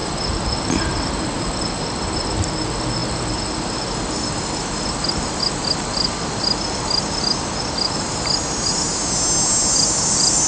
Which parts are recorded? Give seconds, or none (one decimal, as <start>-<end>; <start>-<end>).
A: 0.0-10.5